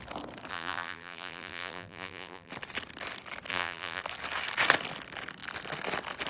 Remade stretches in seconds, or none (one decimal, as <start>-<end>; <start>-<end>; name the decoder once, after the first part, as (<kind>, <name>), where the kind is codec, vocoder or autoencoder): 0.5-2.5 (vocoder, BigVGAN v2); 3.5-4.0